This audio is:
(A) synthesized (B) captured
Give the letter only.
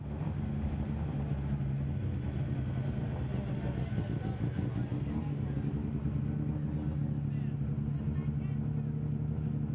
B